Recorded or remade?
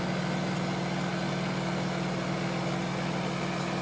recorded